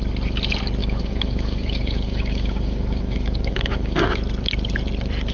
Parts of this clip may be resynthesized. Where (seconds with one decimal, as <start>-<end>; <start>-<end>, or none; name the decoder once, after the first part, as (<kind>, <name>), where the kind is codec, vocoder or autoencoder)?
0.8-4.0 (autoencoder, DAC-VAE)